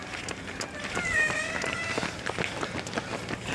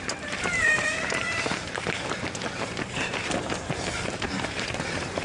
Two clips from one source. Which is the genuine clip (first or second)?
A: first